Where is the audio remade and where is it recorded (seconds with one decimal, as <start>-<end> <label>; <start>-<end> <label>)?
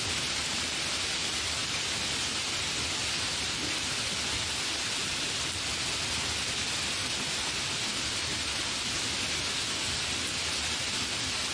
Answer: 0.0-11.5 recorded